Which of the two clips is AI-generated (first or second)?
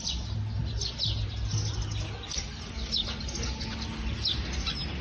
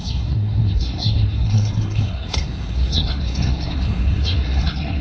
second